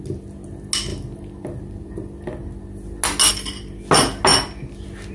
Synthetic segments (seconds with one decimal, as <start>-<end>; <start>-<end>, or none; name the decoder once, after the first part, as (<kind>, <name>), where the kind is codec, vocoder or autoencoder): none